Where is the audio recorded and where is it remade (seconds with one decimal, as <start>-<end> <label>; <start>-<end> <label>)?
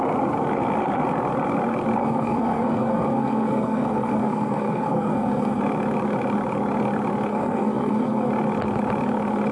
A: 0.0-2.0 recorded; 2.0-5.6 remade; 5.6-7.3 recorded; 7.3-8.3 remade; 8.3-9.5 recorded